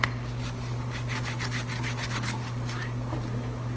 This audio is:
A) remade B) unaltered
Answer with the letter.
B